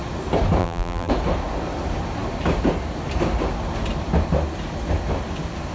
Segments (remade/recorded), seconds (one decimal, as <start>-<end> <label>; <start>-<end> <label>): 0.0-0.6 recorded; 0.6-1.1 remade; 1.1-5.7 recorded